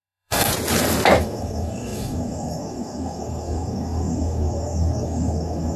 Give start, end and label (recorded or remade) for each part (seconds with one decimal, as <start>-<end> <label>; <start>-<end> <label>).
0.0-0.5 remade; 0.5-1.2 recorded; 1.2-5.8 remade